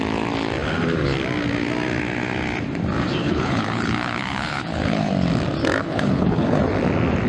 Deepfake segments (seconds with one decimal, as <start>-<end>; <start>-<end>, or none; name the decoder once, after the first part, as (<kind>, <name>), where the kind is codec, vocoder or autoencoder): 3.2-5.1 (codec, HILCodec); 5.8-6.6